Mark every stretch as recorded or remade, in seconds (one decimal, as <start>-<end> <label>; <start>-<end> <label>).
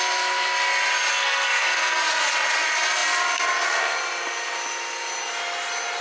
0.0-1.1 recorded; 1.1-2.0 remade; 2.0-6.0 recorded